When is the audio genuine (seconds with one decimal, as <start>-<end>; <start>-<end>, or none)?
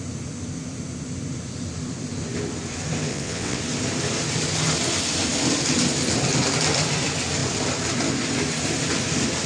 0.0-3.1; 3.6-9.5